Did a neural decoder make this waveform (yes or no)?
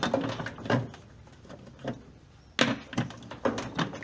no